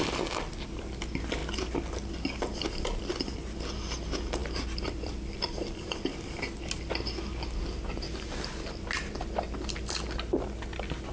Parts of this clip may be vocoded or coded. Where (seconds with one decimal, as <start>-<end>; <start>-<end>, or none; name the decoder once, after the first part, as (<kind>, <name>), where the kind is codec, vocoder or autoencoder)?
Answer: 4.4-5.7 (vocoder, BigVGAN v2)